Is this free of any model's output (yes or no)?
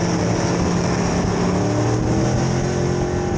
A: yes